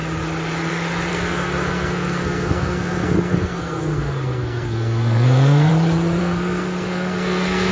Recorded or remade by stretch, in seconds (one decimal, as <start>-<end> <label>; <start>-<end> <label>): 0.0-1.1 recorded; 1.1-5.7 remade; 5.7-6.2 recorded; 6.2-7.7 remade